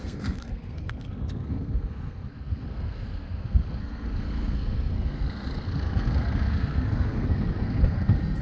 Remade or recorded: remade